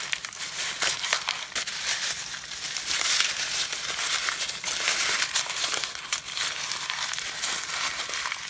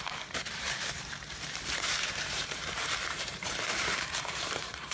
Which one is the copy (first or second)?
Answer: second